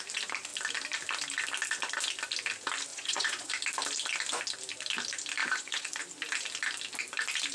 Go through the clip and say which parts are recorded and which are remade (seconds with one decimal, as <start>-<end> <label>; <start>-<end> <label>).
0.0-2.9 recorded; 2.9-3.5 remade; 3.5-5.4 recorded; 5.4-6.0 remade; 6.0-7.5 recorded

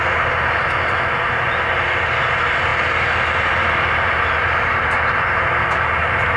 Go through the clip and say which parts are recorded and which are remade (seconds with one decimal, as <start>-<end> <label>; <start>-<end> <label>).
0.0-6.4 recorded

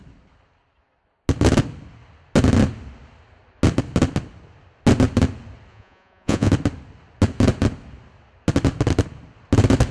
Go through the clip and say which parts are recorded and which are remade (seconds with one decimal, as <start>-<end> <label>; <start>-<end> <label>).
0.0-5.7 recorded; 5.7-6.5 remade; 6.5-9.9 recorded

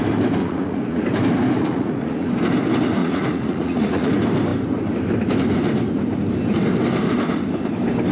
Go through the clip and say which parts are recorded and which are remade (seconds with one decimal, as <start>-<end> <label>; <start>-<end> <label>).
0.0-0.4 recorded; 0.4-1.0 remade; 1.0-1.6 recorded; 1.6-2.3 remade; 2.3-3.0 recorded; 3.0-4.1 remade; 4.1-8.1 recorded

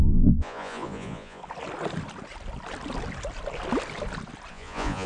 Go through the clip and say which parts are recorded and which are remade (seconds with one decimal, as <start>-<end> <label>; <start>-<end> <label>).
0.0-1.4 remade; 1.4-4.5 recorded; 4.5-5.1 remade

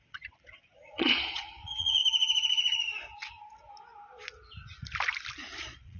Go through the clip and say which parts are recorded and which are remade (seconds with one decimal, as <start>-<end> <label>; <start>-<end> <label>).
0.0-2.0 remade; 2.0-5.6 recorded; 5.6-6.0 remade

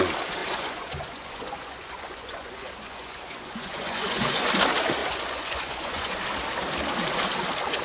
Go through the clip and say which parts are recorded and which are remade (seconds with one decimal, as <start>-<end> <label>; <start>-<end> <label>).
0.0-0.4 recorded; 0.4-4.5 remade; 4.5-5.0 recorded; 5.0-6.2 remade; 6.2-7.8 recorded

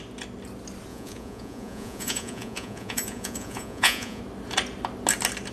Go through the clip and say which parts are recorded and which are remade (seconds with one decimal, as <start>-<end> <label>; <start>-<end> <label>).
0.0-0.9 recorded; 0.9-4.2 remade; 4.2-5.5 recorded